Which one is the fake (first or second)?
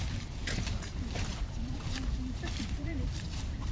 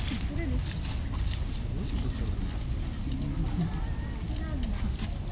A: first